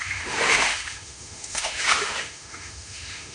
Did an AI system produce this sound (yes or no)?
yes